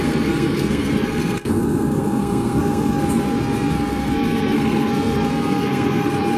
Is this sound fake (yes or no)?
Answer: yes